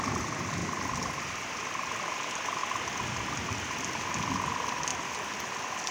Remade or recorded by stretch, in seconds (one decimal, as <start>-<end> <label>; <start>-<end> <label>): 0.0-0.6 remade; 0.6-2.0 recorded; 2.0-2.6 remade; 2.6-3.6 recorded; 3.6-4.9 remade; 4.9-5.9 recorded